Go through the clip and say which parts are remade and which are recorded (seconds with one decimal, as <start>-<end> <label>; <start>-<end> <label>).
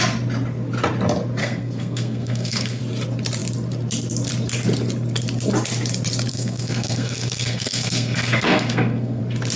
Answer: 0.0-1.4 recorded; 1.4-2.8 remade; 2.8-6.3 recorded; 6.3-9.2 remade; 9.2-9.6 recorded